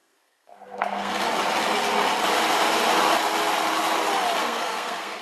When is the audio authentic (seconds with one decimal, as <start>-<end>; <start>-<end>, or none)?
1.1-4.4